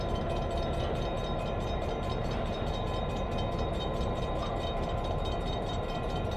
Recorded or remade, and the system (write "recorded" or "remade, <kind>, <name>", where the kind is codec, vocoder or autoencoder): remade, vocoder, BigVGAN v2